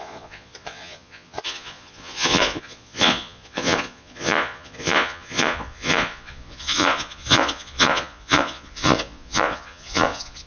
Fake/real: fake